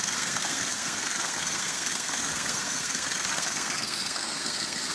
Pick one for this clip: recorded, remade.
remade